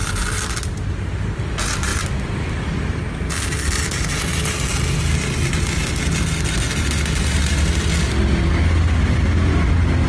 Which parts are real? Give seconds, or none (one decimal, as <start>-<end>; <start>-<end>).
0.0-10.1